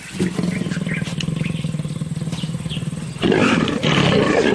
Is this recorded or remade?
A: recorded